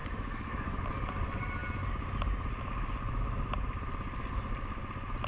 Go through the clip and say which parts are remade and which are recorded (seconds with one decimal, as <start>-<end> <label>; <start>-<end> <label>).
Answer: 0.0-0.8 remade; 0.8-5.3 recorded